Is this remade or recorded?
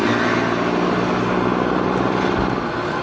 recorded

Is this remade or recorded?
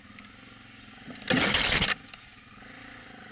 recorded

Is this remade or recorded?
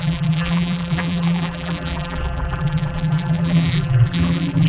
remade